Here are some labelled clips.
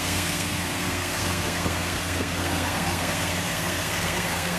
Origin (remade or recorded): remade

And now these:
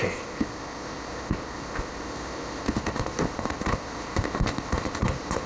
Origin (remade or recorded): remade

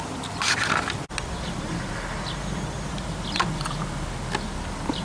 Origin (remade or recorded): recorded